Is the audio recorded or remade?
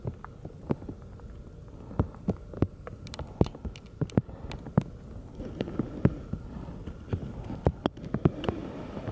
recorded